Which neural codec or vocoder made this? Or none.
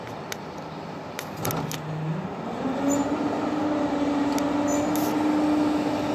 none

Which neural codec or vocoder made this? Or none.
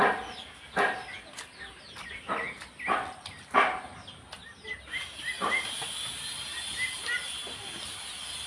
none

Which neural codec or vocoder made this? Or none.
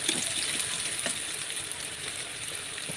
none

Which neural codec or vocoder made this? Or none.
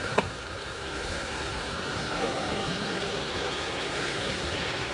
codec, SNAC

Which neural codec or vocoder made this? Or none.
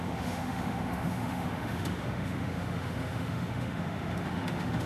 autoencoder, DAC-VAE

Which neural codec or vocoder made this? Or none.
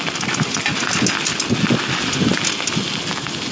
none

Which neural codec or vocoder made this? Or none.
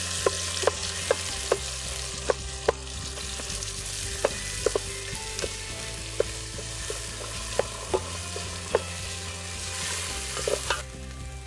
none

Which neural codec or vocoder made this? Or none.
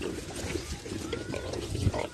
vocoder, Vocos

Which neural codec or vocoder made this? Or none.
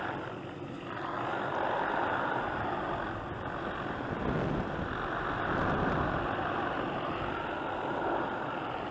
none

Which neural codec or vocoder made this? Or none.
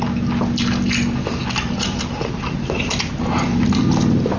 none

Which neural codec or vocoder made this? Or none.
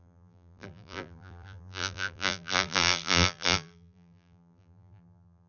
vocoder, BigVGAN v2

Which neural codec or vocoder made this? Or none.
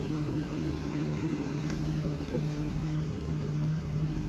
codec, SNAC